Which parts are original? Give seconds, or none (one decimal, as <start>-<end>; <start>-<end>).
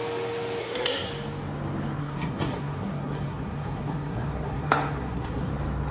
0.0-0.6; 1.1-2.0; 5.5-5.9